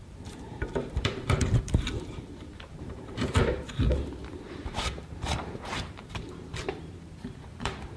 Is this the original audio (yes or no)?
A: no